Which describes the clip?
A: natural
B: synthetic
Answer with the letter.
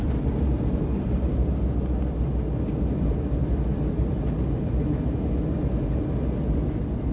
A